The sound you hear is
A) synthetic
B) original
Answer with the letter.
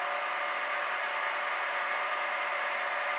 B